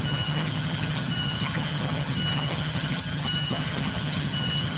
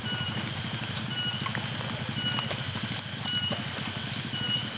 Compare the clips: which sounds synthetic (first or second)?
first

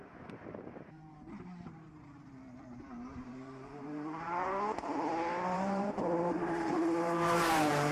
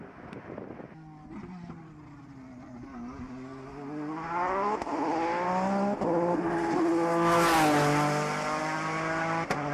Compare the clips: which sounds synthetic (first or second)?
first